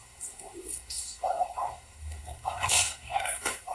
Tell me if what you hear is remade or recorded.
remade